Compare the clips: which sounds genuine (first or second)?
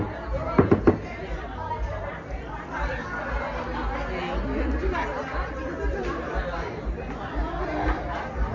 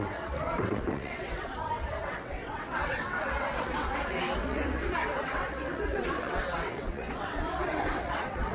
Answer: first